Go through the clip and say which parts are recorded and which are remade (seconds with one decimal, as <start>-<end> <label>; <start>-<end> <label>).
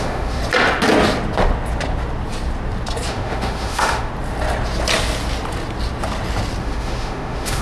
0.0-0.4 remade; 0.4-3.1 recorded; 3.1-4.1 remade; 4.1-6.6 recorded; 6.6-7.6 remade